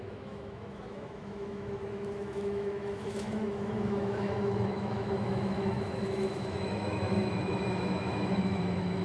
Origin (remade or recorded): remade